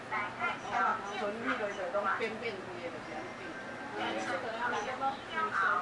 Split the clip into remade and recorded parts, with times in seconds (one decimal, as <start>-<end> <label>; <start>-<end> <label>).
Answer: 0.0-5.8 recorded